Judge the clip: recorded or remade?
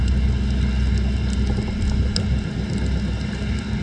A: recorded